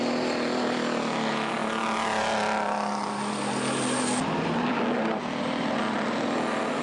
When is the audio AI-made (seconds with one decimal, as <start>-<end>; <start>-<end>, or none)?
none